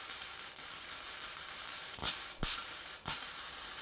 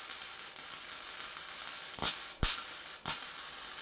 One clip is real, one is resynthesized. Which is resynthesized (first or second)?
first